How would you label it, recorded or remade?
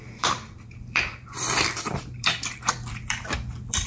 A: remade